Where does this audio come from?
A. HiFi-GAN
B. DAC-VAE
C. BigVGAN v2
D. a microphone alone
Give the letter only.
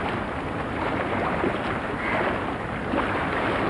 D